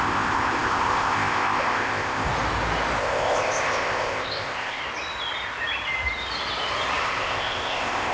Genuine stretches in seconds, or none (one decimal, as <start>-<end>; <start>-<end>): 2.3-3.0; 4.8-7.0